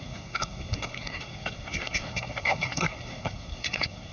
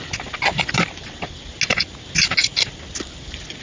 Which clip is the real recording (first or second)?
second